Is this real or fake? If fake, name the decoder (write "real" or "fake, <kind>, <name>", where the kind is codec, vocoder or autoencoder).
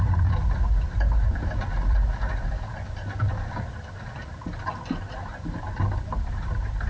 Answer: fake, vocoder, BigVGAN v2